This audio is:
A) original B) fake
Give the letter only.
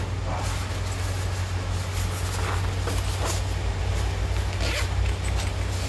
A